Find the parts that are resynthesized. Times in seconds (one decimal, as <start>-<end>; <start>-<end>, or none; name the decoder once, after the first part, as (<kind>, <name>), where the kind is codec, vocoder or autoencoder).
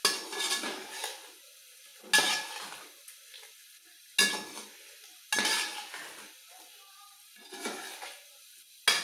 none